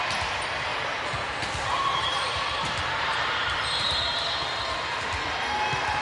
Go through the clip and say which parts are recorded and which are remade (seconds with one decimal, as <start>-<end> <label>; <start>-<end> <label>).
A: 0.0-0.7 recorded; 0.7-4.0 remade; 4.0-6.0 recorded